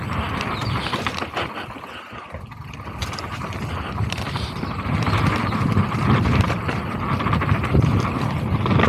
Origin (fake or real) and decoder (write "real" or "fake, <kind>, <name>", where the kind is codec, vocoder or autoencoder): fake, vocoder, BigVGAN v2